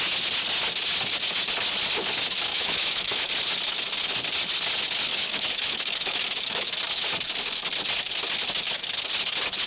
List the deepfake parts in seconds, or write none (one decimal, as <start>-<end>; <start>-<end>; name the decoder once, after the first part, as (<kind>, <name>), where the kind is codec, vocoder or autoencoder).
2.5-3.3 (autoencoder, DAC-VAE); 5.1-6.7